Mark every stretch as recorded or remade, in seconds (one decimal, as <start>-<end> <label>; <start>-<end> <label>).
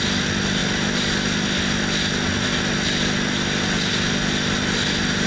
0.0-5.3 recorded